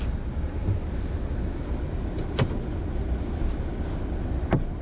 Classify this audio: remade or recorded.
recorded